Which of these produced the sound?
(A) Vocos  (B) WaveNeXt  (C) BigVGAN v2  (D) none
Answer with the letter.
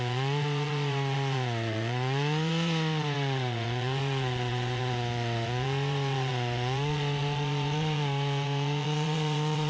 A